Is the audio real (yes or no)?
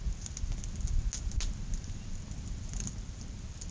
yes